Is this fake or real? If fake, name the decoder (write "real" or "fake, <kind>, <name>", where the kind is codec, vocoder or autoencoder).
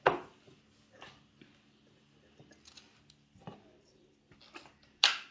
real